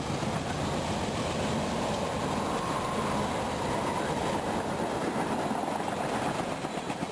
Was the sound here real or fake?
real